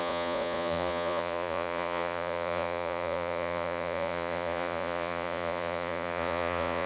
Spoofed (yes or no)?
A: yes